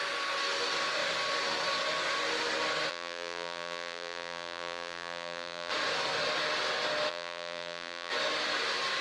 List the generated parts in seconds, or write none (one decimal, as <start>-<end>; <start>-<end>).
2.9-5.7; 7.1-8.1